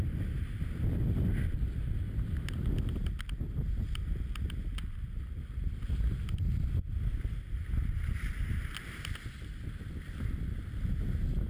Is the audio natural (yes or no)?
yes